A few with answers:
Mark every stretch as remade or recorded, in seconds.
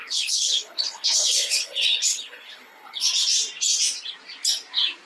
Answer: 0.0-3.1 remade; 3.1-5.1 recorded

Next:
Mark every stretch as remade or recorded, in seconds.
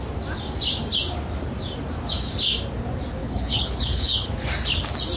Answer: 0.0-3.2 recorded; 3.2-4.3 remade; 4.3-5.2 recorded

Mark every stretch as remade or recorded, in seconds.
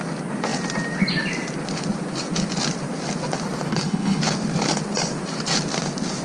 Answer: 0.0-3.7 recorded; 3.7-4.2 remade; 4.2-6.2 recorded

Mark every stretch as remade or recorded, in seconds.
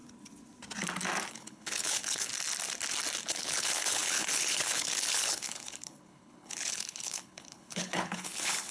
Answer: 0.0-1.3 recorded; 1.3-2.3 remade; 2.3-3.3 recorded; 3.3-8.7 remade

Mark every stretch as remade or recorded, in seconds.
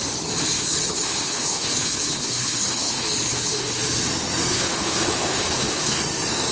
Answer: 0.0-0.4 recorded; 0.4-3.8 remade; 3.8-4.5 recorded; 4.5-6.0 remade; 6.0-6.5 recorded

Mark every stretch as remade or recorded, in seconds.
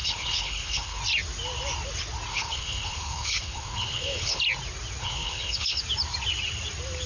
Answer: 0.0-1.0 remade; 1.0-2.3 recorded; 2.3-4.4 remade; 4.4-5.0 recorded; 5.0-5.8 remade; 5.8-7.1 recorded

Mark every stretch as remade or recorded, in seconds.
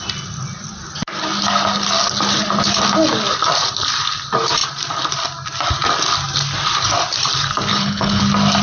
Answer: 0.0-7.7 recorded; 7.7-8.2 remade; 8.2-8.6 recorded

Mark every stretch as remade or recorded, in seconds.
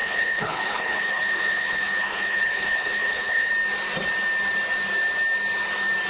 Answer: 0.0-3.5 remade; 3.5-6.1 recorded